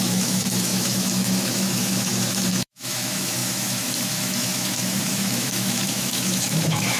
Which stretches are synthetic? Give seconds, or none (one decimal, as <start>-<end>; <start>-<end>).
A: 0.0-7.0